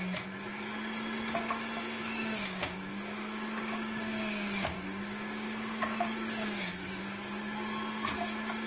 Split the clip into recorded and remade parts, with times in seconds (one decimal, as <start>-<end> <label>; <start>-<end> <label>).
0.0-2.0 recorded; 2.0-7.0 remade; 7.0-8.7 recorded